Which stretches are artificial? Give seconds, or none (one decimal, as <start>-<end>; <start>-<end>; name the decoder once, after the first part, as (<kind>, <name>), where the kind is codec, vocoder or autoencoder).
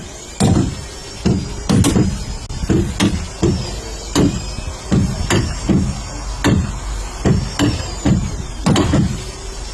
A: none